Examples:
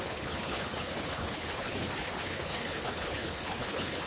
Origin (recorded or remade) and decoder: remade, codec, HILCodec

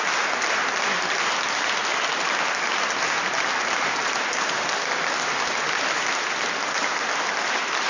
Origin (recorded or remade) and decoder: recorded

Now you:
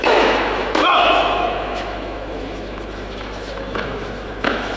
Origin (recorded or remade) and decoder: remade, autoencoder, DAC-VAE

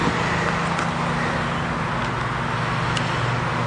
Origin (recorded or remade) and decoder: recorded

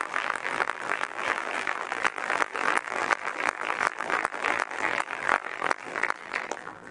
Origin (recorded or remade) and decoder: remade, vocoder, BigVGAN v2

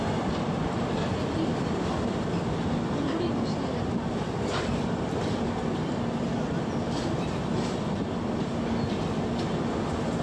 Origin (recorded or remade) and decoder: recorded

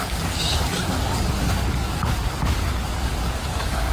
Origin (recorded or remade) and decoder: remade, codec, DAC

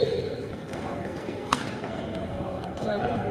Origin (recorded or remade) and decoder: remade, codec, SNAC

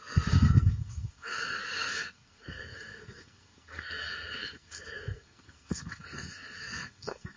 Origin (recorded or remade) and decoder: remade, codec, SNAC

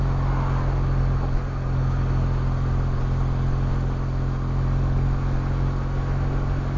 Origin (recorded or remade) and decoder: recorded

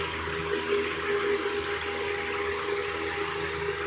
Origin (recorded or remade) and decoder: recorded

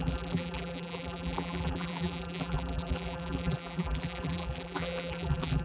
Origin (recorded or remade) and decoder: remade, vocoder, BigVGAN v2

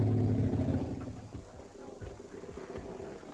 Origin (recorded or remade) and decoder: recorded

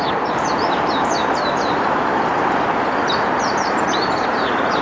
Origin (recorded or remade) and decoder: remade, vocoder, BigVGAN v2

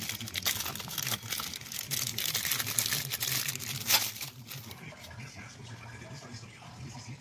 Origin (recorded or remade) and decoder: recorded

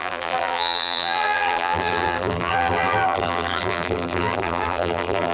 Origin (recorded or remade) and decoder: remade, vocoder, BigVGAN v2